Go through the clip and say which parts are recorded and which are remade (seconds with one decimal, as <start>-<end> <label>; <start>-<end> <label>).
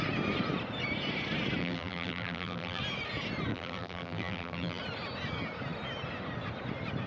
0.0-1.6 recorded; 1.6-2.8 remade; 2.8-3.5 recorded; 3.5-4.8 remade; 4.8-7.1 recorded